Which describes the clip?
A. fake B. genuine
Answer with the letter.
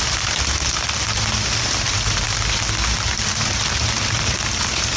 B